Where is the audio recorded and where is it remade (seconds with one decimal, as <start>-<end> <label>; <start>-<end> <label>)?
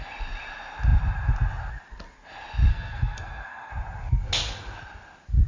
0.0-2.7 recorded; 2.7-3.7 remade; 3.7-5.5 recorded